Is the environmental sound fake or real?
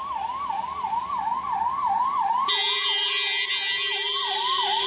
real